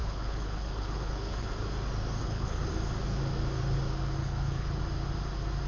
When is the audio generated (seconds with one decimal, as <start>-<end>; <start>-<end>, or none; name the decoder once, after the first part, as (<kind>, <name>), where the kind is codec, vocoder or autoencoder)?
0.0-1.5 (codec, HILCodec); 2.2-2.7; 4.2-4.8

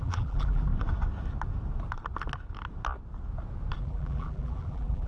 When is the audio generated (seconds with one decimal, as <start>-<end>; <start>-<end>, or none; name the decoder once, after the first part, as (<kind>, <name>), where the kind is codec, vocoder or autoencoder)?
0.0-0.7 (vocoder, BigVGAN v2); 3.8-5.1

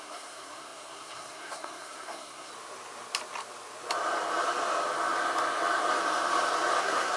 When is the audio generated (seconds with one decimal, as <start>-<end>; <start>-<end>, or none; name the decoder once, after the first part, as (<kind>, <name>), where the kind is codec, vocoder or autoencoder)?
0.0-2.5 (codec, SNAC); 6.8-7.2